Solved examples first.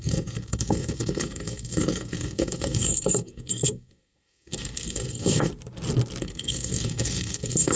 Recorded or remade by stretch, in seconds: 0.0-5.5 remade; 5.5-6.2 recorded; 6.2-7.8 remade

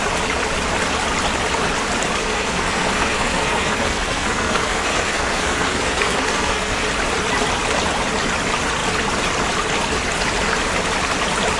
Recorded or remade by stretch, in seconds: 0.0-2.2 recorded; 2.2-6.8 remade; 6.8-11.6 recorded

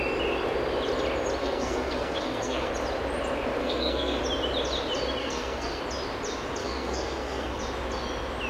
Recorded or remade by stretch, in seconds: 0.0-1.4 recorded; 1.4-2.7 remade; 2.7-3.6 recorded; 3.6-4.2 remade; 4.2-5.2 recorded; 5.2-5.8 remade; 5.8-6.6 recorded; 6.6-7.6 remade; 7.6-8.5 recorded

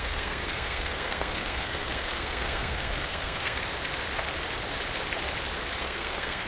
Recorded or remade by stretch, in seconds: 0.0-3.6 remade; 3.6-5.8 recorded; 5.8-6.5 remade

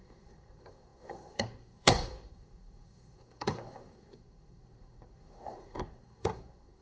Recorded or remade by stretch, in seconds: 0.0-6.8 remade

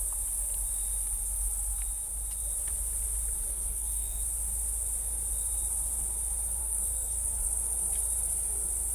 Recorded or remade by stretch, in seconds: 0.0-3.5 recorded; 3.5-4.2 remade; 4.2-6.6 recorded; 6.6-7.4 remade; 7.4-8.9 recorded